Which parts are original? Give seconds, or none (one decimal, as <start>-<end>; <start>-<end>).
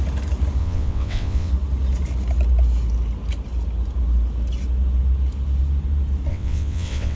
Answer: 0.0-0.6; 1.5-6.3